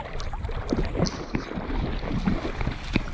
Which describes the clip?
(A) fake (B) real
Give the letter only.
B